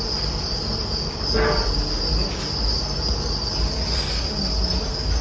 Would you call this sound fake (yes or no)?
no